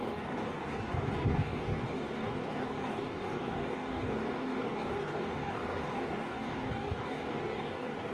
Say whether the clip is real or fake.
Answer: fake